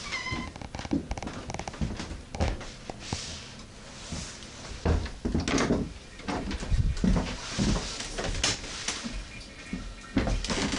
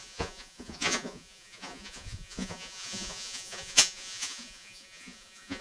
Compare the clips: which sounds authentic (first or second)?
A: first